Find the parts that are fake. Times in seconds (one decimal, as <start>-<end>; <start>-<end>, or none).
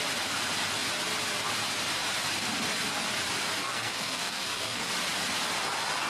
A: 3.6-4.9